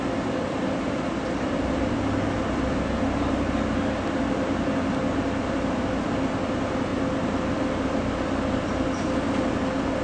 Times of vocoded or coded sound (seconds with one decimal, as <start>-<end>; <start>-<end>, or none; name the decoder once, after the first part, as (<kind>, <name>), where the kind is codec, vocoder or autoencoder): none